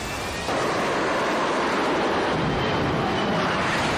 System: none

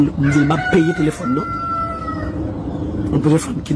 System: none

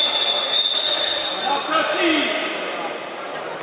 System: vocoder, BigVGAN v2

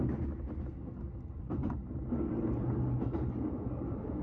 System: none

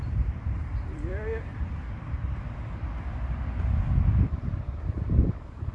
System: vocoder, BigVGAN v2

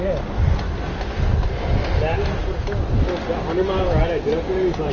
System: none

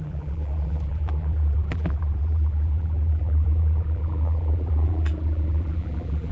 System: vocoder, BigVGAN v2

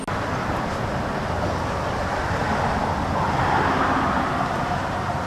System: none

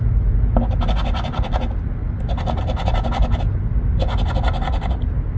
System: none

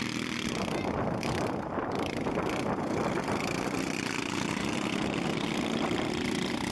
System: vocoder, BigVGAN v2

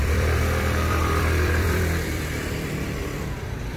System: vocoder, BigVGAN v2